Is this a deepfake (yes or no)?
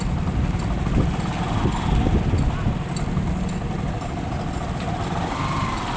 no